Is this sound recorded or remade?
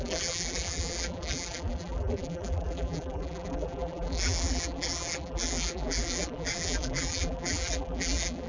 remade